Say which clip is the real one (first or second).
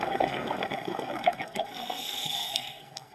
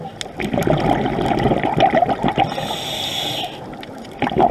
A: second